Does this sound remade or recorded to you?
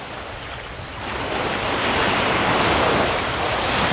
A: recorded